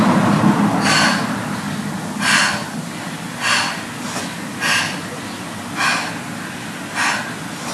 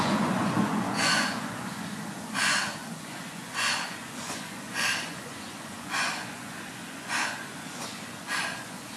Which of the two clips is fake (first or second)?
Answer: second